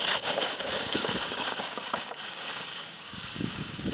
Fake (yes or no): yes